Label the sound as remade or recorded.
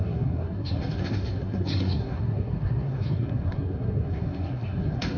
remade